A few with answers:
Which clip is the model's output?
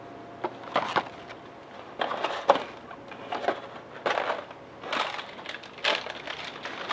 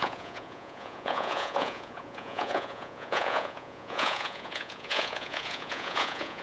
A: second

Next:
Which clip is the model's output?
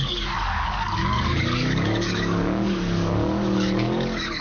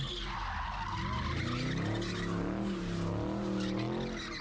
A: first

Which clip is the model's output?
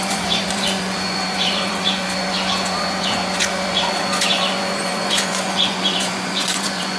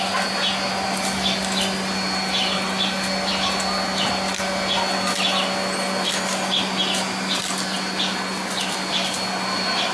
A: first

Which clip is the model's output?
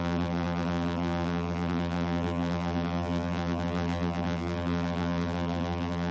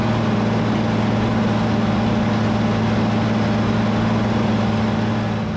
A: first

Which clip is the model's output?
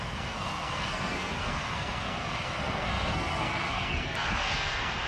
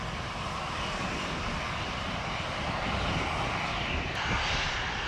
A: first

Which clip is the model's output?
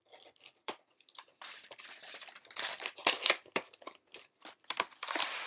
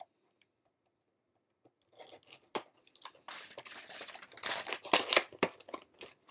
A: first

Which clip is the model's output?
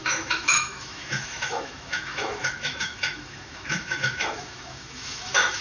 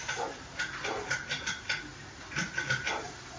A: first